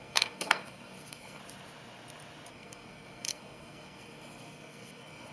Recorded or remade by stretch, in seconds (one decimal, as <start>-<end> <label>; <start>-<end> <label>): 0.0-1.4 remade; 1.4-2.5 recorded; 2.5-5.3 remade